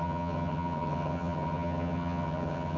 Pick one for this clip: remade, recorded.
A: remade